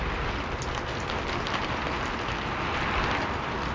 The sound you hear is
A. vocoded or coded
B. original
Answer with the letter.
B